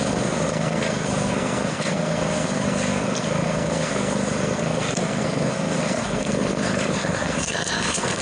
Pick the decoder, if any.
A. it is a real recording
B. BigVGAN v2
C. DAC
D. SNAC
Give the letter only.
D